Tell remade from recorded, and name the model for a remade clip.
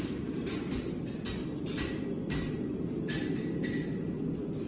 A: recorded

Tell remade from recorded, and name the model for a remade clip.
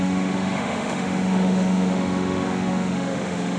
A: remade, autoencoder, DAC-VAE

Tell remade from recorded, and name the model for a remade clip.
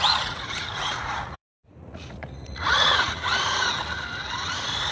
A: remade, vocoder, Vocos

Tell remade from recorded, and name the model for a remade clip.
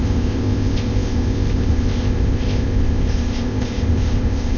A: remade, codec, ZipCodec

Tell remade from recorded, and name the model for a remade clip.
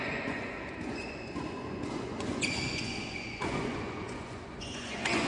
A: remade, vocoder, Vocos